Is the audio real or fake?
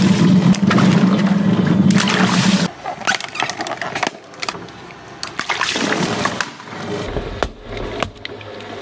real